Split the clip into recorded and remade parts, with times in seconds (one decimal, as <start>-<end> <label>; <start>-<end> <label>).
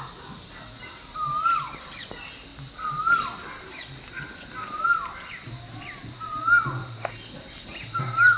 0.0-8.4 recorded